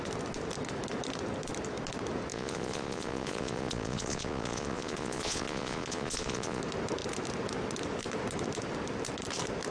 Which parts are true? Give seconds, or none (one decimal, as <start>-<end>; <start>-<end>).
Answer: 0.0-2.3; 6.6-9.7